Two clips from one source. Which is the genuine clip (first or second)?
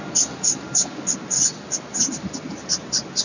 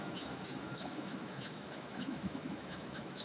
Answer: first